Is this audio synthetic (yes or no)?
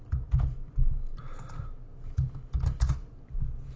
no